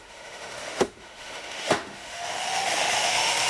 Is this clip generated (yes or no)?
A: yes